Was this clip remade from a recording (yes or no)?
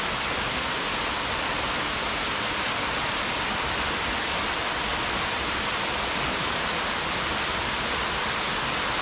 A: no